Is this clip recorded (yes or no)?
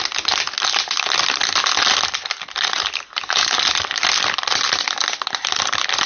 yes